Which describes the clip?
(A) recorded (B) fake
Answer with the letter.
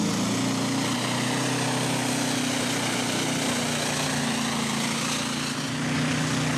A